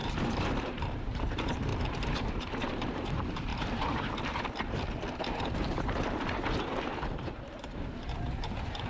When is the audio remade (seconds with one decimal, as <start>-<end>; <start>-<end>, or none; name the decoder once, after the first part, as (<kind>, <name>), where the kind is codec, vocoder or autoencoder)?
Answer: 0.0-1.7 (vocoder, BigVGAN v2); 2.3-3.5; 7.0-8.9